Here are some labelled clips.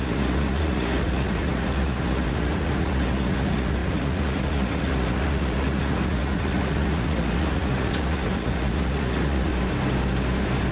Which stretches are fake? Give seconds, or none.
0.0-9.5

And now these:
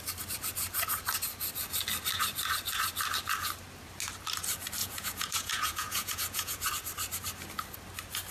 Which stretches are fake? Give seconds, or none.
4.8-6.7